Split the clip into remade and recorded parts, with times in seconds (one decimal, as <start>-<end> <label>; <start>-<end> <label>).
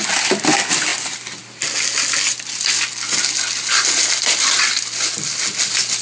0.0-6.0 recorded